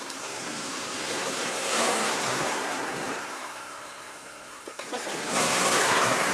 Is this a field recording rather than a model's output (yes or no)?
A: no